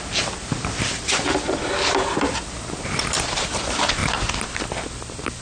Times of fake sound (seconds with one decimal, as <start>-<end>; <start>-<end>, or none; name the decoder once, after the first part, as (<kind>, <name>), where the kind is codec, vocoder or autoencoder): 0.4-3.6 (vocoder, BigVGAN v2)